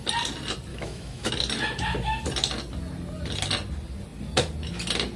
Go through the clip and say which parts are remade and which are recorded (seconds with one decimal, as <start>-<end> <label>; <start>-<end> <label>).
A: 0.0-0.7 recorded; 0.7-1.3 remade; 1.3-5.2 recorded